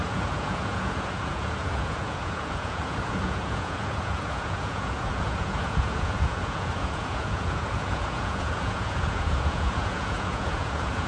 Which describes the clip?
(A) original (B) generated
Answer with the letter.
B